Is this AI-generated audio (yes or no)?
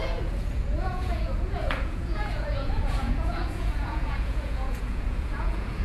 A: yes